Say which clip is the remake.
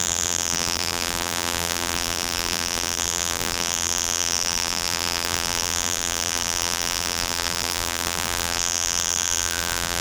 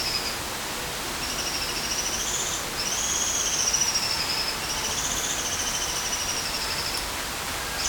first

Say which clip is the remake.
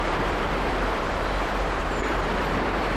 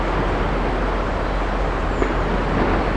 first